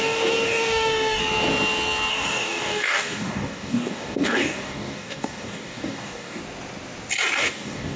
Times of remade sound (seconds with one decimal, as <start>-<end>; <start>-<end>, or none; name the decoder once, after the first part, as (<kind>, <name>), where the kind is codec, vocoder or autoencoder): 0.0-1.2 (codec, DAC); 2.1-6.4; 7.4-8.0